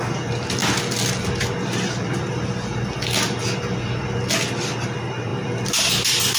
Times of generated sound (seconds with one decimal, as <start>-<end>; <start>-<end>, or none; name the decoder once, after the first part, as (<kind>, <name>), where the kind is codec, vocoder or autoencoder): none